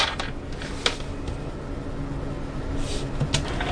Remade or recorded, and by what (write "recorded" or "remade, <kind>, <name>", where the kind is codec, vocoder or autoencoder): recorded